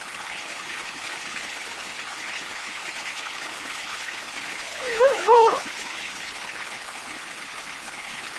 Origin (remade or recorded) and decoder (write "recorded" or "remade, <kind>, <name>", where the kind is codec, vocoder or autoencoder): remade, codec, HILCodec